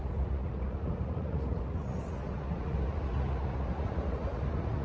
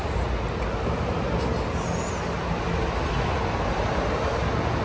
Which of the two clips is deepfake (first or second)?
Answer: first